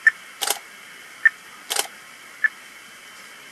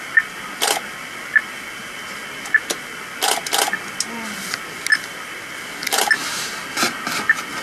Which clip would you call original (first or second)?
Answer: second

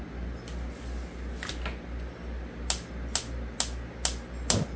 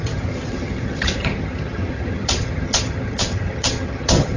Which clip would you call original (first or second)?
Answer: first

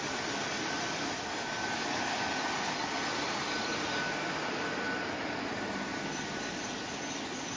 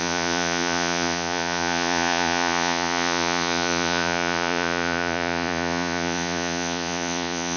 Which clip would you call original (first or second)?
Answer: first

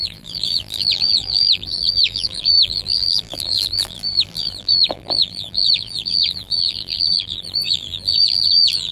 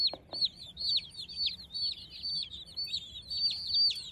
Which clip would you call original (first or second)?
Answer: second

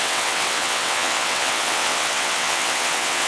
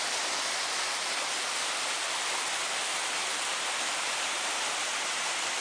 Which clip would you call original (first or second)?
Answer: second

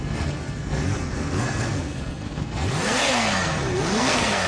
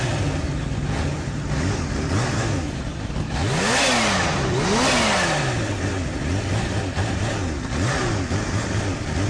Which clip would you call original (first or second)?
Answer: second